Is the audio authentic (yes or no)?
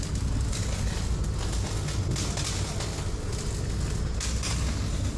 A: yes